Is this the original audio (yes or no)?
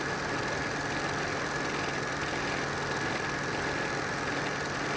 yes